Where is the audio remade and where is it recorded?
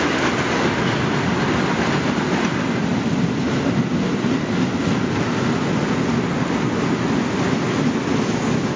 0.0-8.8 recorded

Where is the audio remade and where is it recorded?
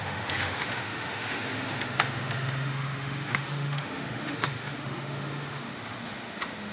0.0-6.7 remade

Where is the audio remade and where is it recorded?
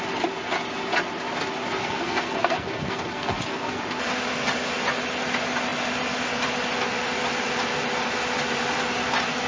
0.0-1.8 recorded; 1.8-3.8 remade; 3.8-9.5 recorded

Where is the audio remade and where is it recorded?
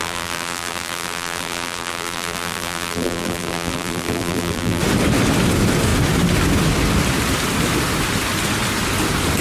0.0-4.8 remade; 4.8-9.4 recorded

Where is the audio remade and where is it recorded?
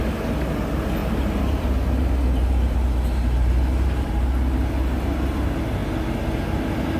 0.0-1.0 recorded; 1.0-4.7 remade; 4.7-7.0 recorded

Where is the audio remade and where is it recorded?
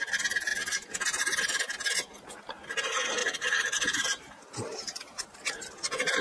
0.0-3.2 recorded; 3.2-5.7 remade; 5.7-6.2 recorded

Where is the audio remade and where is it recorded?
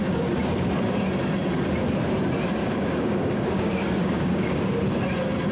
0.0-2.6 recorded; 2.6-4.6 remade; 4.6-5.5 recorded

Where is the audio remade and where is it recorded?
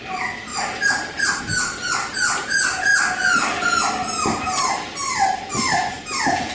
0.0-0.5 recorded; 0.5-1.4 remade; 1.4-6.5 recorded